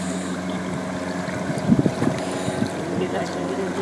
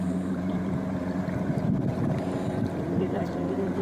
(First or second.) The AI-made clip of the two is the second